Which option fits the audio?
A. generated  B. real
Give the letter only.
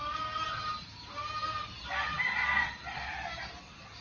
B